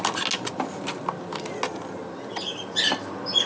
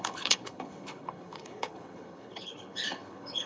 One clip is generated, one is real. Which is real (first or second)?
first